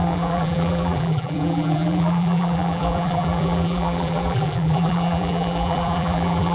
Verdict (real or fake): fake